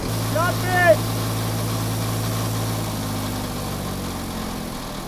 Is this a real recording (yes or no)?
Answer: yes